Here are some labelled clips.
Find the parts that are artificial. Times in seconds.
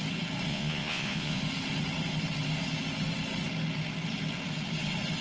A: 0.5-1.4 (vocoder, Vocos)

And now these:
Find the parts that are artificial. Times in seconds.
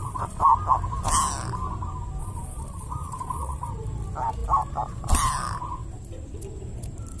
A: 0.0-0.5 (vocoder, Vocos); 2.2-3.7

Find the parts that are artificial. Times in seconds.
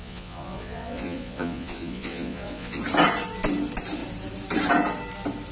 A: 0.0-2.8 (vocoder, Vocos)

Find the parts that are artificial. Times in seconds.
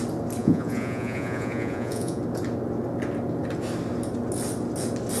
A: 0.4-2.2 (vocoder, Vocos)